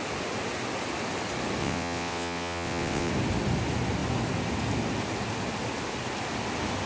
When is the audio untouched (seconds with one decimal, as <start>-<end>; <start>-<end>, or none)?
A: 0.0-1.6; 3.1-6.9